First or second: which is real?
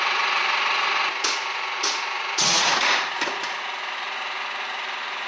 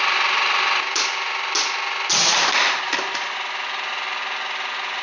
second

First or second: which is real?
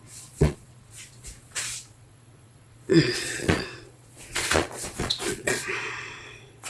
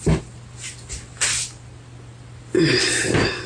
second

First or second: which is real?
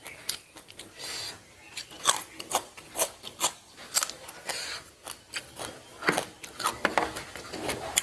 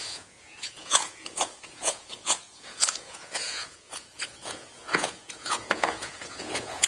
first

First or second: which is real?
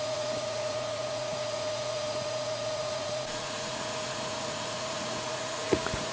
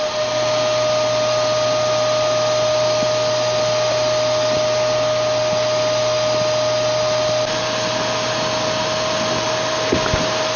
second